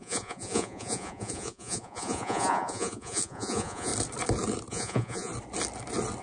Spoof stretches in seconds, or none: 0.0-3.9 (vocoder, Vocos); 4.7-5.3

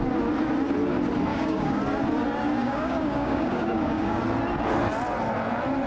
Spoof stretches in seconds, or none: 1.3-1.8 (codec, DAC); 2.6-4.2

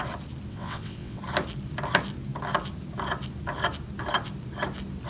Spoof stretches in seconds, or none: 0.5-1.2 (vocoder, WaveNeXt)

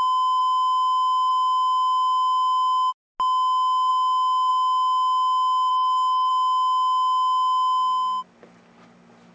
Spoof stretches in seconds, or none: 5.7-6.3 (autoencoder, DAC-VAE)

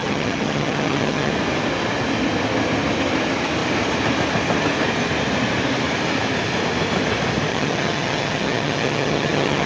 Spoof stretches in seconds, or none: 0.0-1.3 (vocoder, HiFi-GAN); 7.5-9.7

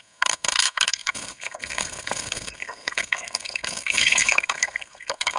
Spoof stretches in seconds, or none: 0.0-5.4 (codec, SNAC)